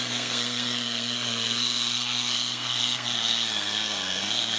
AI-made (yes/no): yes